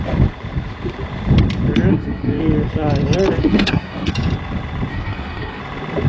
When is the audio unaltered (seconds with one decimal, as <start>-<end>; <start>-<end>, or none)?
0.0-1.9; 2.4-3.4; 4.1-4.9; 5.6-6.1